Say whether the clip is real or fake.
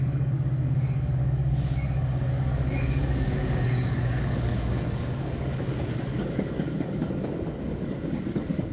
fake